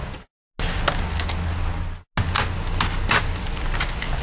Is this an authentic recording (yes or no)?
yes